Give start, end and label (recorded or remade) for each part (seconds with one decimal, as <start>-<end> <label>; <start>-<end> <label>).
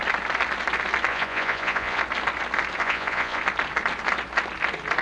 0.0-1.1 recorded; 1.1-2.0 remade; 2.0-2.8 recorded; 2.8-3.4 remade; 3.4-5.0 recorded